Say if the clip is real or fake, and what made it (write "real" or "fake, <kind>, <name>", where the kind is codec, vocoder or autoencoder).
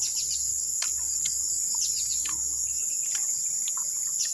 real